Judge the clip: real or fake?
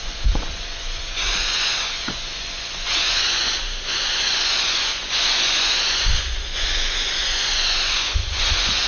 fake